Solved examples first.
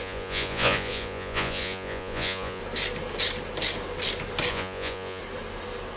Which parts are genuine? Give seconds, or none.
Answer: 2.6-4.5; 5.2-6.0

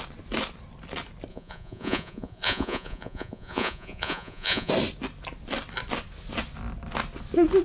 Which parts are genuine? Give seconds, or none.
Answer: 0.0-1.3; 4.7-7.6

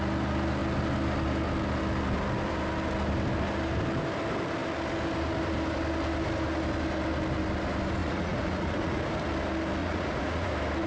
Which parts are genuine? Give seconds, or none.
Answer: 0.0-8.0; 9.0-9.8; 10.5-10.9

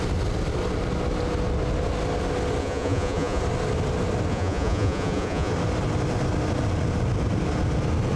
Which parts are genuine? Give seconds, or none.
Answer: 0.0-2.6; 3.4-4.3; 5.5-8.2

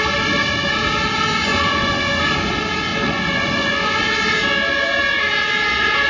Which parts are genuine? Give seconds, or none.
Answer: 0.0-1.3; 2.2-2.9; 4.0-6.1

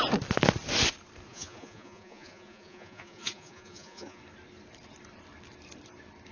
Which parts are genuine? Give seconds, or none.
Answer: 0.0-1.3; 4.2-6.3